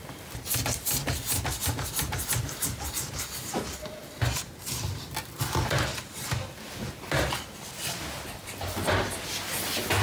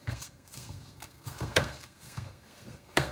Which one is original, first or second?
first